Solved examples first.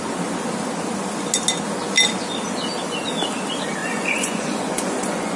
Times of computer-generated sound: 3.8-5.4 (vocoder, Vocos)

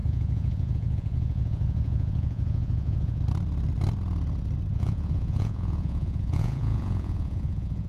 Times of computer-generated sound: 0.0-3.2 (vocoder, Vocos); 4.7-7.9